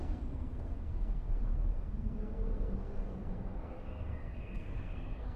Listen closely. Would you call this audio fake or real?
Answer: fake